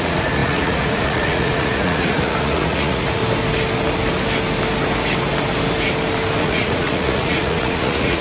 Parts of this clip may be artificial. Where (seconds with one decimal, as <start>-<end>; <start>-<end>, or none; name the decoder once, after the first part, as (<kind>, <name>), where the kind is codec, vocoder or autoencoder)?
0.0-3.2 (vocoder, Vocos); 6.4-8.2